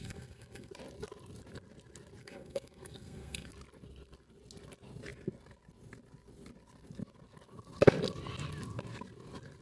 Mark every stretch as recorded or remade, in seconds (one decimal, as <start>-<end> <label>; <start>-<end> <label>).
0.0-0.7 remade; 0.7-2.2 recorded; 2.2-3.5 remade; 3.5-9.6 recorded